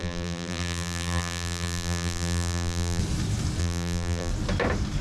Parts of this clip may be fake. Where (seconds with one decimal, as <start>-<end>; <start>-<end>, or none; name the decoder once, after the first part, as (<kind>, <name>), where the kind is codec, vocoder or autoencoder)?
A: 0.0-3.0 (vocoder, BigVGAN v2); 3.6-4.3